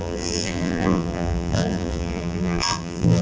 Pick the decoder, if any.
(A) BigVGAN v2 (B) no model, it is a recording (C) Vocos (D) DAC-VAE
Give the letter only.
A